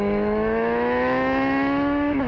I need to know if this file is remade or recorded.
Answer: remade